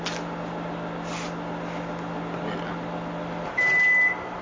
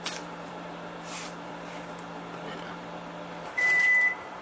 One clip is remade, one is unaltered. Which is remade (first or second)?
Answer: second